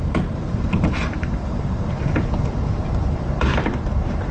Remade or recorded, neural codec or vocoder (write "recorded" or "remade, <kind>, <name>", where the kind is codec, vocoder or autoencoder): remade, vocoder, BigVGAN v2